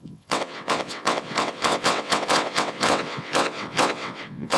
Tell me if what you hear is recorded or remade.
remade